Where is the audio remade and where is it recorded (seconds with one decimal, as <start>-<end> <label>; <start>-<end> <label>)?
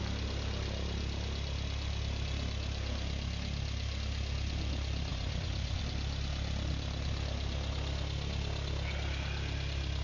0.0-5.1 recorded; 5.1-5.8 remade; 5.8-10.0 recorded